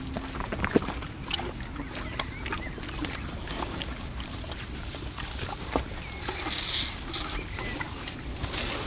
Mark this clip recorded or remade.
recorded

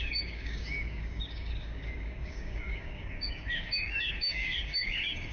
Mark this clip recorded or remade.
remade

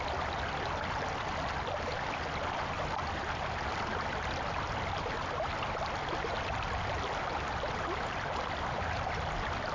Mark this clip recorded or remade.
recorded